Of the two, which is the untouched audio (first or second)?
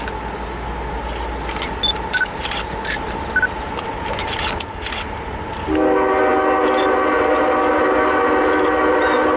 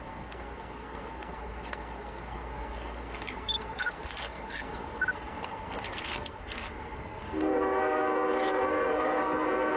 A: first